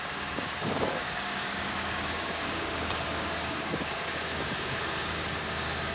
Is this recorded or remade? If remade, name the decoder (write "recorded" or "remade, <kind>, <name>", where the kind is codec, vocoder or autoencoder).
remade, codec, DAC